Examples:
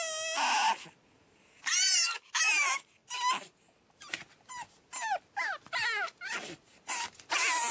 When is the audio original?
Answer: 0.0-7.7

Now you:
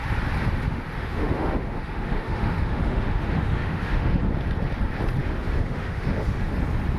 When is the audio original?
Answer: 0.0-0.6; 4.2-5.2; 6.6-7.0